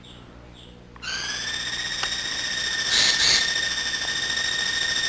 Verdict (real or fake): real